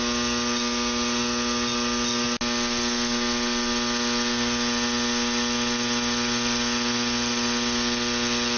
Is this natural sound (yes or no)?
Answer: yes